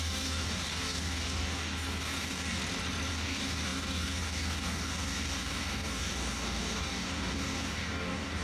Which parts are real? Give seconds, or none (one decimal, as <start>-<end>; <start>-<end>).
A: 2.6-3.1